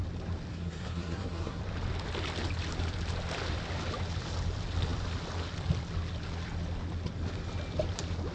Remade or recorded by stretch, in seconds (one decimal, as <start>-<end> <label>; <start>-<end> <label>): 0.0-0.5 recorded; 0.5-1.6 remade; 1.6-8.3 recorded